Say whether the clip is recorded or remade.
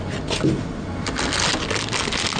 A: recorded